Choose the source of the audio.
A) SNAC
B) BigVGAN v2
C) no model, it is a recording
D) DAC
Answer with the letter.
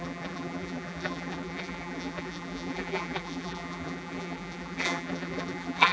B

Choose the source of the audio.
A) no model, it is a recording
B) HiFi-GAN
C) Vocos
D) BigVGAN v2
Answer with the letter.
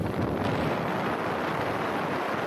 D